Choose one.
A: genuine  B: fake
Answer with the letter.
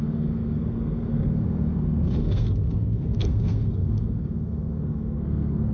B